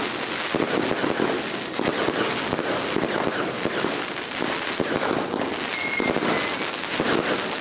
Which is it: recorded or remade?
recorded